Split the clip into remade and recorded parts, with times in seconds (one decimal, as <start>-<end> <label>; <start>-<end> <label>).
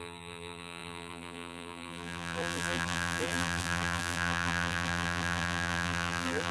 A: 0.0-6.5 remade